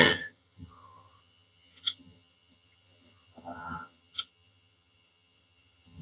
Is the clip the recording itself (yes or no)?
no